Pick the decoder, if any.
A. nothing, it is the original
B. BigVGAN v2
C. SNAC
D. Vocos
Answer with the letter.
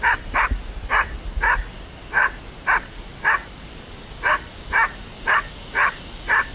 A